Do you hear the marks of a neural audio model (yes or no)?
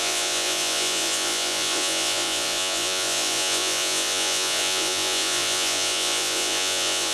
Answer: yes